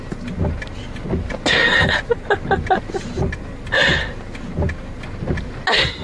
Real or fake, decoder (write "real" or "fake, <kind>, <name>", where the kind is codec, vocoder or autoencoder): real